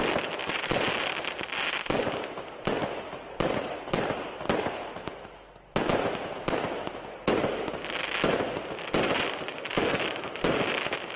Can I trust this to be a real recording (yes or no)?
yes